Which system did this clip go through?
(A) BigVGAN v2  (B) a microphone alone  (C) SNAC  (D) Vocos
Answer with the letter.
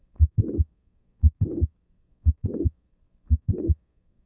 C